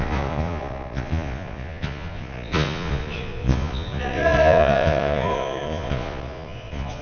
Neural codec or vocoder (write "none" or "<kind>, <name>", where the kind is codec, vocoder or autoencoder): vocoder, Vocos